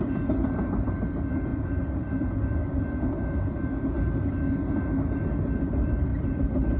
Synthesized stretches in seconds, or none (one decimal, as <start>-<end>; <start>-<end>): 6.1-6.8